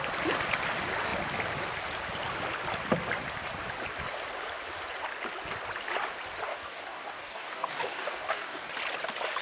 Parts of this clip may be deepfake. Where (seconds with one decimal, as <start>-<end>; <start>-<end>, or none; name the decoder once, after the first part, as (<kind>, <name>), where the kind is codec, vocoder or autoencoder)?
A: 6.5-8.7 (codec, DAC)